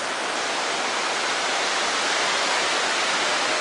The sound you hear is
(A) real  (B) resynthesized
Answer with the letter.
A